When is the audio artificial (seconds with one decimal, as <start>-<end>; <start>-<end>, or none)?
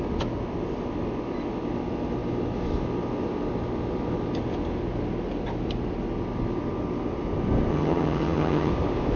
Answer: 7.7-8.7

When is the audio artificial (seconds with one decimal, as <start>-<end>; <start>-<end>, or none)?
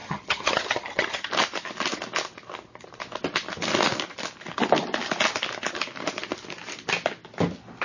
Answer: 0.0-1.3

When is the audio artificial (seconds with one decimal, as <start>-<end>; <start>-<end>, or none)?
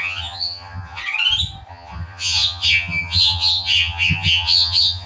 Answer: 0.0-1.0; 1.7-5.1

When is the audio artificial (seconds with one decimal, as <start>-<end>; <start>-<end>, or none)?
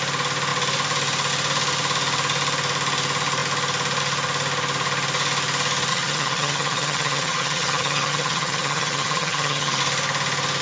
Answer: 5.9-9.8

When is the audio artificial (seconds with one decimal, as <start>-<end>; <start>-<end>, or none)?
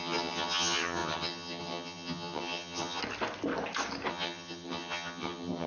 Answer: 0.0-3.0; 4.1-5.7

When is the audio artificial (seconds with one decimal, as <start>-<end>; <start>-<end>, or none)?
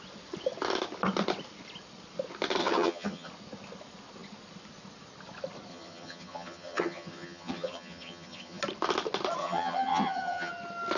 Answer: 2.6-3.3; 5.7-8.6; 9.4-10.5